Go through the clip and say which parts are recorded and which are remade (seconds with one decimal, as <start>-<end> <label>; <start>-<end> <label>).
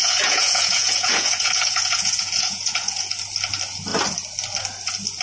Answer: 0.0-3.1 remade; 3.1-5.2 recorded